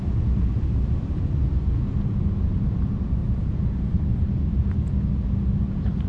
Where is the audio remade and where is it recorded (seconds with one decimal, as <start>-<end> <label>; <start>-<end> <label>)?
0.0-3.2 recorded; 3.2-5.4 remade; 5.4-6.1 recorded